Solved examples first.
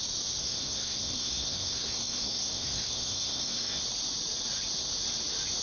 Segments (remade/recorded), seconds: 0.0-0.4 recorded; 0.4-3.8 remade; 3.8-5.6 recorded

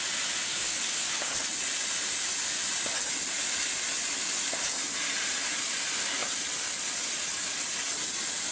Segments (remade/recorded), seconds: 0.0-0.5 recorded; 0.5-1.3 remade; 1.3-8.5 recorded

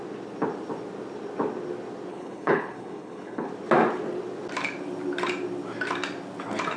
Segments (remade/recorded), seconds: 0.0-2.1 recorded; 2.1-3.5 remade; 3.5-6.8 recorded

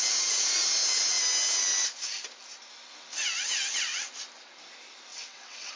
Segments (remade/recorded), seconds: 0.0-5.1 recorded; 5.1-5.8 remade

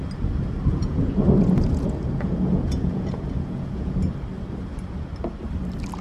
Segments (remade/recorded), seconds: 0.0-0.7 recorded; 0.7-4.1 remade; 4.1-6.0 recorded

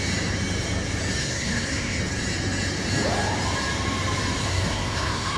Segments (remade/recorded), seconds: 0.0-1.2 recorded; 1.2-2.0 remade; 2.0-4.4 recorded; 4.4-5.4 remade

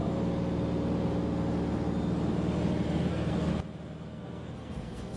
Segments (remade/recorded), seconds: 0.0-3.1 recorded; 3.1-3.5 remade; 3.5-4.1 recorded; 4.1-5.2 remade